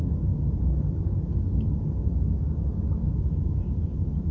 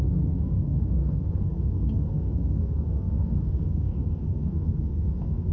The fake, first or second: second